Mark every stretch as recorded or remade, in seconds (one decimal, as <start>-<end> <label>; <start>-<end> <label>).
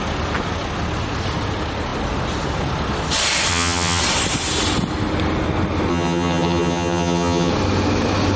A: 0.0-3.5 recorded; 3.5-4.0 remade; 4.0-5.9 recorded; 5.9-7.5 remade; 7.5-8.4 recorded